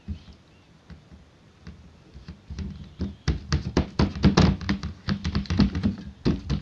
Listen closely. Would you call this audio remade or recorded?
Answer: recorded